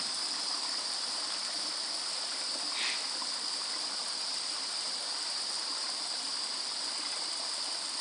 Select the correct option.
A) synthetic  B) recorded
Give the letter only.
B